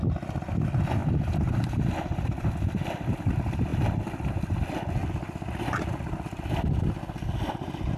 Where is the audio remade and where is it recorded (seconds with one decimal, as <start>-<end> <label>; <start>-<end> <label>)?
0.0-1.0 recorded; 1.0-2.5 remade; 2.5-3.7 recorded; 3.7-4.3 remade; 4.3-8.0 recorded